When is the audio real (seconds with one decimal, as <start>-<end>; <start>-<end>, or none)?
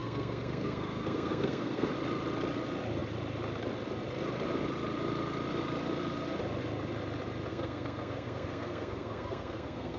1.9-7.5